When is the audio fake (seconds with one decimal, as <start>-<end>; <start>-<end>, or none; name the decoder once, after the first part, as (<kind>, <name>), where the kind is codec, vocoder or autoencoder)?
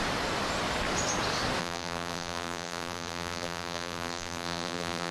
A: 1.6-5.1 (vocoder, BigVGAN v2)